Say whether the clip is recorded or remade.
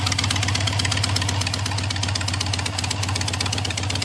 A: recorded